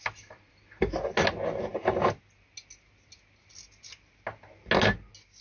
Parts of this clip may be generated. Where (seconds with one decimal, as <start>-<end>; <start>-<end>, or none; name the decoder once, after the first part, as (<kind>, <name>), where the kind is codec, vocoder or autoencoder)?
none